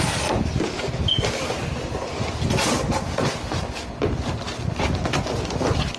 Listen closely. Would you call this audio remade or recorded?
recorded